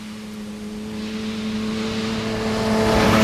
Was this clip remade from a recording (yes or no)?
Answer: no